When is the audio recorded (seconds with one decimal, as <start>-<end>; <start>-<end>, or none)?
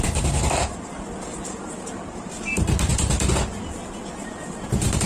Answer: 0.0-1.3; 2.3-5.1